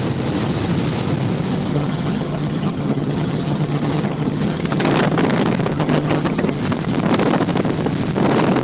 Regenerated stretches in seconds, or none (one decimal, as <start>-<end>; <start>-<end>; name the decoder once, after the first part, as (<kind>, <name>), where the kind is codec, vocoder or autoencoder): 1.7-4.9 (vocoder, HiFi-GAN); 5.7-6.6